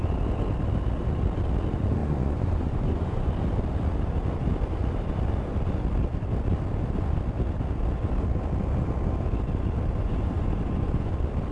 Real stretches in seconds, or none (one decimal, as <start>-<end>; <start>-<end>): 0.0-2.0; 3.3-10.0; 11.1-11.5